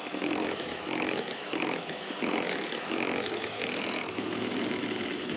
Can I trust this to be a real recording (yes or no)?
no